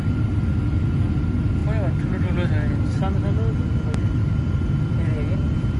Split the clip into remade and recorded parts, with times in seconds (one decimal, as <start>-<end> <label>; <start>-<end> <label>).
0.0-5.8 recorded